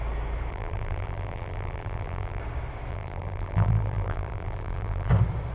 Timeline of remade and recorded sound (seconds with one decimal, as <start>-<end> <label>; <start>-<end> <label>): 0.0-0.5 recorded; 0.5-2.4 remade; 2.4-2.9 recorded; 2.9-5.1 remade; 5.1-5.5 recorded